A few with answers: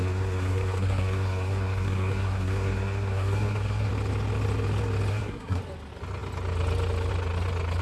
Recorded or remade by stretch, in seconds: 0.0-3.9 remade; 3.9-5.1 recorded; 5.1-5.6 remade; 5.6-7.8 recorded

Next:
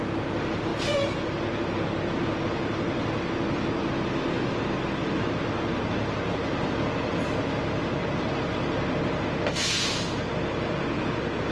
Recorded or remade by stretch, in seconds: 0.0-11.5 recorded

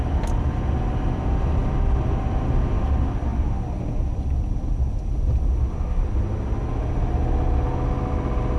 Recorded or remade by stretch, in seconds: 0.0-8.6 recorded

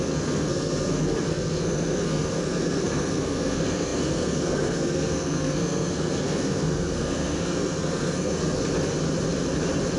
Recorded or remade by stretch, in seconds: 0.0-8.6 remade; 8.6-10.0 recorded

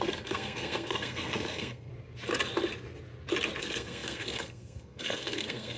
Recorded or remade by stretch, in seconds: 0.0-1.9 remade; 1.9-3.6 recorded; 3.6-5.8 remade

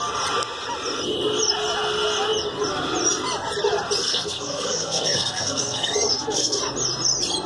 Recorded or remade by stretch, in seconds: 0.0-4.0 recorded; 4.0-6.6 remade; 6.6-7.5 recorded

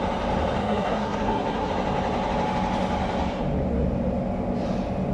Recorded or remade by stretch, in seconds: 0.0-0.6 recorded; 0.6-1.7 remade; 1.7-5.1 recorded